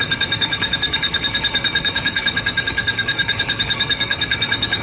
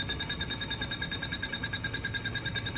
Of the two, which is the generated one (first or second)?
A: first